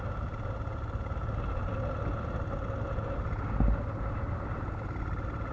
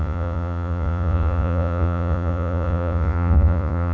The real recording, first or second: first